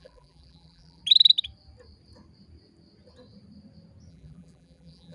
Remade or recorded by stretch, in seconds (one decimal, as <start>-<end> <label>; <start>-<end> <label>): 0.0-1.0 remade; 1.0-4.1 recorded; 4.1-5.1 remade